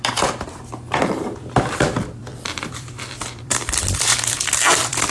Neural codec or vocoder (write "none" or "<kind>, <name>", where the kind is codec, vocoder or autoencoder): vocoder, BigVGAN v2